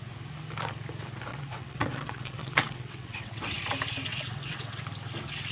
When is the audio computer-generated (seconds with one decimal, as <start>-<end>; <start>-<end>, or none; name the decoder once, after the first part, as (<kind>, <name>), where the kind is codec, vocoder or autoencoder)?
1.3-3.4 (vocoder, WaveNeXt); 4.1-4.8